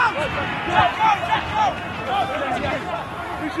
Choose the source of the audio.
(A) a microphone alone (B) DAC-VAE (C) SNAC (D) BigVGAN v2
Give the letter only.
A